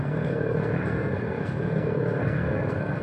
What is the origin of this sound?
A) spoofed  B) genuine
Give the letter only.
A